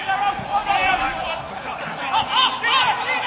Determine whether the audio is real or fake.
real